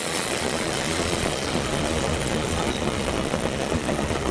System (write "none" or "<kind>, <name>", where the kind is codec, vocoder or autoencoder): vocoder, Vocos